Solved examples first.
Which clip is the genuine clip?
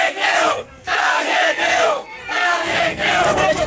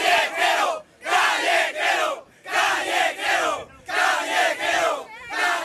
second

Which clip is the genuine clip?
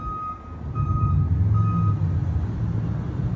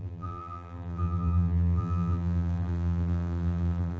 first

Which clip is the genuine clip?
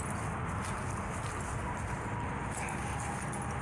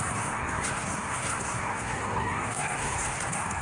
first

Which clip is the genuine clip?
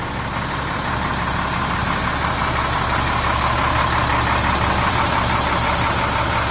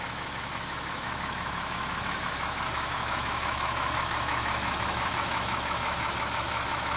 first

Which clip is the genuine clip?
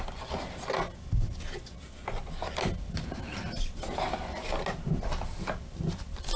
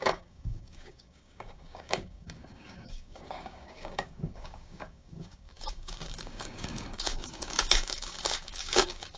first